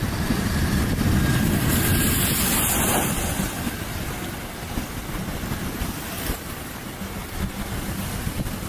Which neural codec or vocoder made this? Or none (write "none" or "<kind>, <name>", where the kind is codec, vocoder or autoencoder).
none